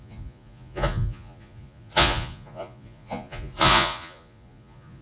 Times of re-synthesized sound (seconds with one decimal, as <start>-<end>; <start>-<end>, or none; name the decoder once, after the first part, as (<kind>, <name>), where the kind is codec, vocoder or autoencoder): 0.0-5.0 (vocoder, Vocos)